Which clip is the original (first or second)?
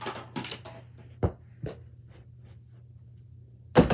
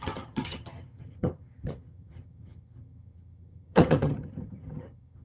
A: first